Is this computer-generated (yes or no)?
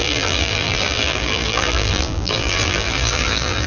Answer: yes